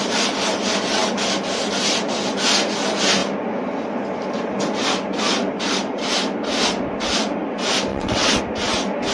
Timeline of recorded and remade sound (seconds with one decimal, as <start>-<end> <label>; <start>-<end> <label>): 0.0-7.9 recorded; 7.9-8.4 remade; 8.4-9.1 recorded